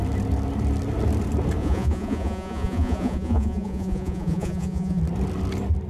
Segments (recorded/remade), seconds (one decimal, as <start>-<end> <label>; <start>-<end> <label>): 0.0-1.6 recorded; 1.6-5.0 remade; 5.0-5.9 recorded